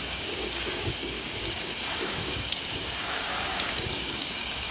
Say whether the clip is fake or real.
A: fake